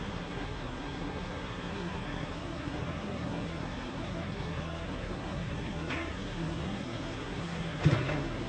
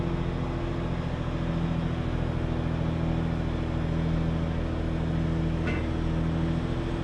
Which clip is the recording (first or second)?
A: second